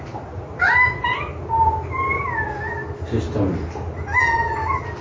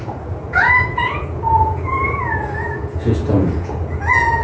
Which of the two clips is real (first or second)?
first